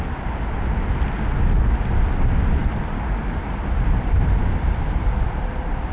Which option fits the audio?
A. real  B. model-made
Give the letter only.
A